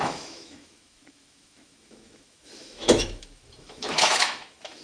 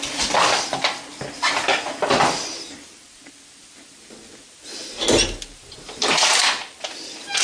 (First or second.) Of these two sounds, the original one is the second